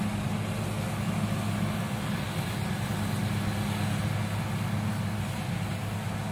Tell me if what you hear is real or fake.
real